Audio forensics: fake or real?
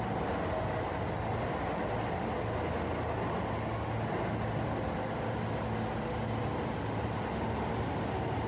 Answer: real